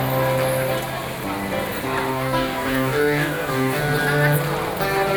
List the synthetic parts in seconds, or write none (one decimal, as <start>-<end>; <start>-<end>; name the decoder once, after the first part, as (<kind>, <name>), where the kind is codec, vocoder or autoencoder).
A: 2.1-3.8 (codec, DAC)